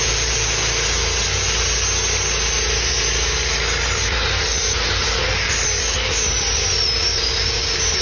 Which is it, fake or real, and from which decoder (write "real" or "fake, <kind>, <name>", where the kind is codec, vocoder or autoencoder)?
real